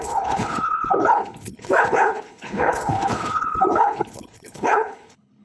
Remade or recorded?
remade